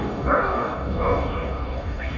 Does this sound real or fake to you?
fake